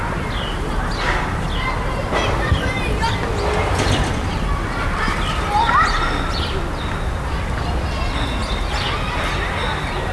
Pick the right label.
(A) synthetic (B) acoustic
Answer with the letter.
B